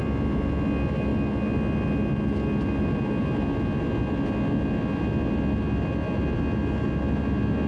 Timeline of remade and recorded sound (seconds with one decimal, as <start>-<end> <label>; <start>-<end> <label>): 0.0-7.7 recorded